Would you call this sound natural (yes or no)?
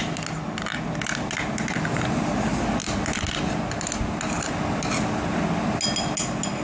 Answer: yes